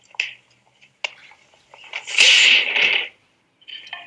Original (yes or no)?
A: yes